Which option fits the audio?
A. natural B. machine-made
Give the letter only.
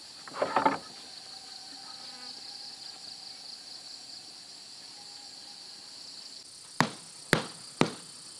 A